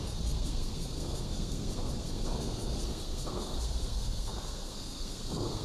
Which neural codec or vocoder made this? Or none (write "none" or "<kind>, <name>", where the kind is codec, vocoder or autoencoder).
codec, SNAC